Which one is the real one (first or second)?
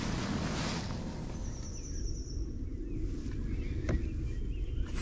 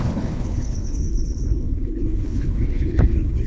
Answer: first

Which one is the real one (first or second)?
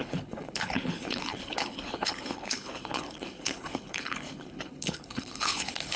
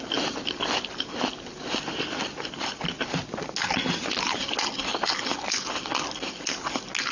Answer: second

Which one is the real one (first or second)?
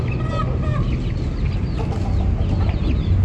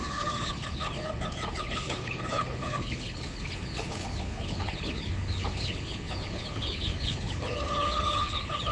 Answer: first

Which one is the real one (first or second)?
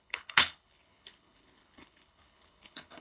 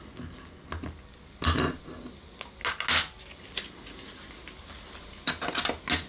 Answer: second